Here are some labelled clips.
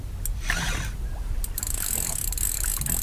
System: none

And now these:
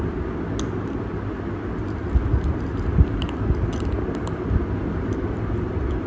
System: none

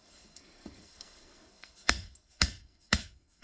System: codec, SNAC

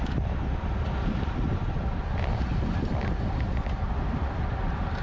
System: vocoder, BigVGAN v2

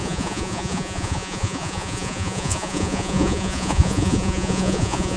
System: vocoder, Vocos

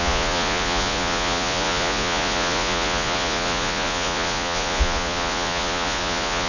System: vocoder, Vocos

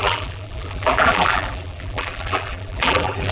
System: vocoder, BigVGAN v2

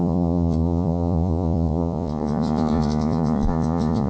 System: vocoder, Vocos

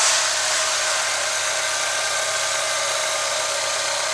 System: none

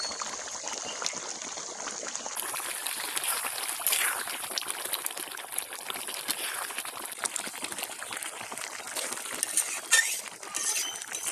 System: none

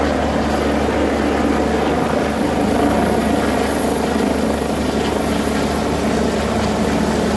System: none